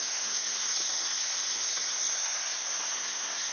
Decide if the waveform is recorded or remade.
remade